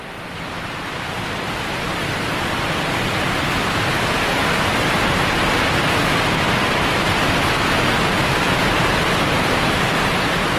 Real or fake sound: real